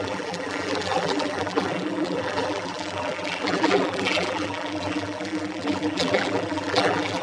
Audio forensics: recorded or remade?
remade